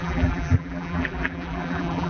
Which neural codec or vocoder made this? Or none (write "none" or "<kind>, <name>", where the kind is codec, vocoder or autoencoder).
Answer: vocoder, BigVGAN v2